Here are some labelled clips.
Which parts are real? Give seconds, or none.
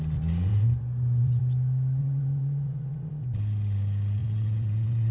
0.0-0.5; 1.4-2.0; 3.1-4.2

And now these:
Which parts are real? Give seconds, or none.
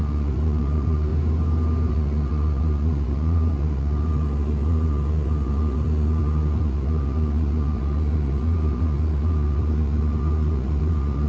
1.1-1.9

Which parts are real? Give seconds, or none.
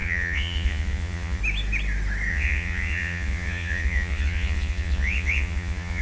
1.4-2.3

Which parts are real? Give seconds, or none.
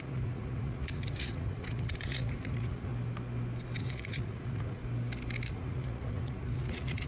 2.9-3.8; 4.8-5.5